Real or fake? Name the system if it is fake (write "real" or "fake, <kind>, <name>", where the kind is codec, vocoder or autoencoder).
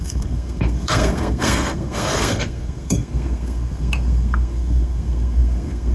fake, codec, SNAC